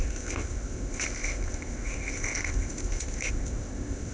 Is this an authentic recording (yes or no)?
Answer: no